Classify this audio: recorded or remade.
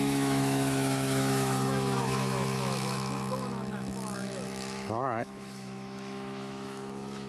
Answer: remade